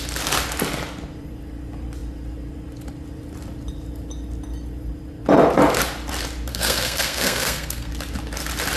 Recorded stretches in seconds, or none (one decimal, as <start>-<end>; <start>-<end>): 0.0-6.5; 7.9-8.8